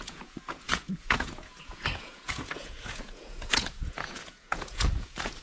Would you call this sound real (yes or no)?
no